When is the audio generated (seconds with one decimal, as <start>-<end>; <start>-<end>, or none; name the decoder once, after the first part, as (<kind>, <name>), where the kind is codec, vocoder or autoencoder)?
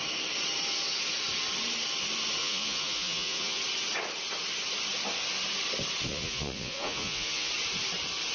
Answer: 2.4-3.6 (vocoder, Vocos); 6.1-7.5